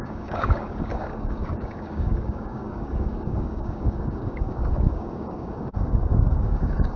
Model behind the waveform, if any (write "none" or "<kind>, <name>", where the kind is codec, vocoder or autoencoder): codec, DAC